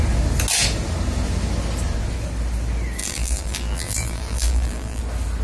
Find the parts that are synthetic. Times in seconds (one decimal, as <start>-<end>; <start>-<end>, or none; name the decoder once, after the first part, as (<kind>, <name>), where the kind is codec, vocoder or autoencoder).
3.0-5.0 (vocoder, BigVGAN v2)